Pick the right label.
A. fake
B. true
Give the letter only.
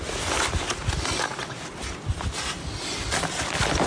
B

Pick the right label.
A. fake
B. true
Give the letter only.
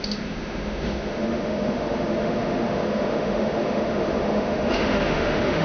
A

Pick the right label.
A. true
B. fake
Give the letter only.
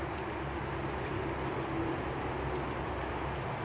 A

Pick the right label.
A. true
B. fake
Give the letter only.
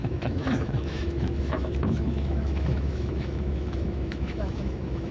B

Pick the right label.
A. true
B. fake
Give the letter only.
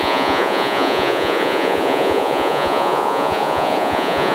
B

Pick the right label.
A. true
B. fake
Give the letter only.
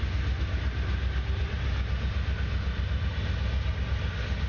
A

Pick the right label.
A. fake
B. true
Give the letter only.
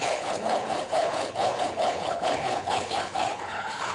A